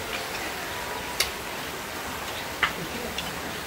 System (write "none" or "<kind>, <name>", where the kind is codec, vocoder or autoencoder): none